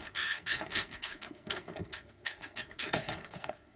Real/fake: fake